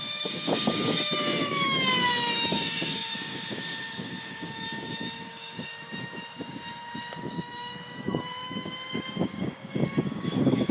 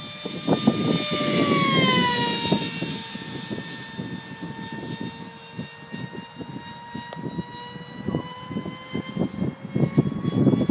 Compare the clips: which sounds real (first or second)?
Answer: second